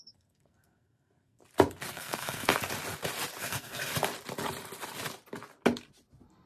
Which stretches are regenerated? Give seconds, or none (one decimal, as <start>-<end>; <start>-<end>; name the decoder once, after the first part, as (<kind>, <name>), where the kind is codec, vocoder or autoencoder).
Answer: 0.0-1.4 (codec, SNAC); 1.9-2.5; 3.4-3.9